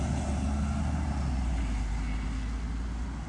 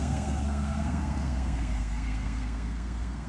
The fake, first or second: second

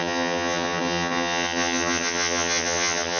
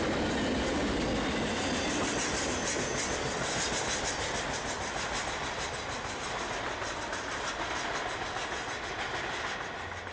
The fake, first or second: first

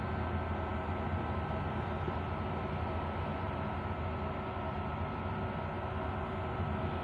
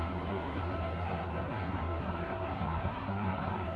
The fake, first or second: second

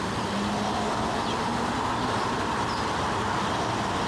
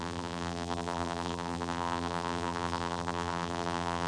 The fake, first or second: second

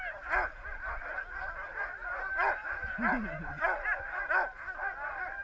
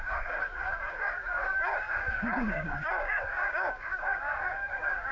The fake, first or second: second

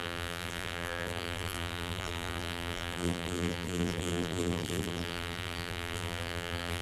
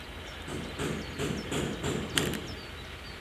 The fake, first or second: first